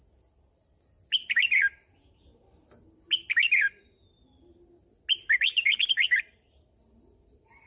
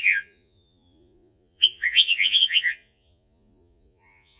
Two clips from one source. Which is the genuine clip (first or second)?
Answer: first